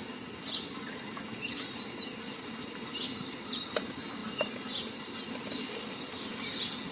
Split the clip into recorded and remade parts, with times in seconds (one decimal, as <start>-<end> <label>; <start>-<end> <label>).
0.0-6.9 recorded